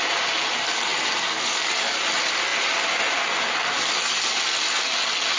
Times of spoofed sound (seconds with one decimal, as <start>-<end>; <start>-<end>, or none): none